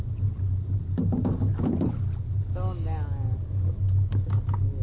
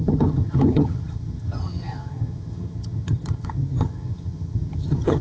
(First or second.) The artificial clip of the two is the second